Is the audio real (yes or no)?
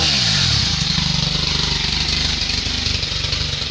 yes